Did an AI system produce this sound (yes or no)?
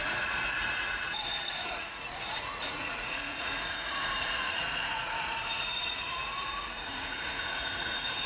yes